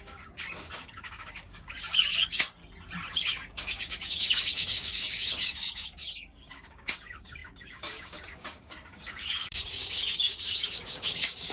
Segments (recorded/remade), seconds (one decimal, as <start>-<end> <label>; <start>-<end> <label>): 0.0-2.6 remade; 2.6-3.1 recorded; 3.1-11.5 remade